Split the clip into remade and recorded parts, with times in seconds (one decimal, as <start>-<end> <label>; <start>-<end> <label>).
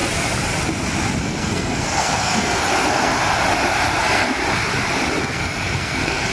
0.0-1.2 recorded; 1.2-3.1 remade; 3.1-4.0 recorded; 4.0-4.4 remade; 4.4-5.2 recorded; 5.2-6.3 remade